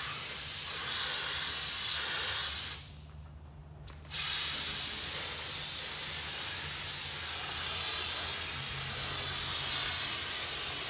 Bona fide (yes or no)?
yes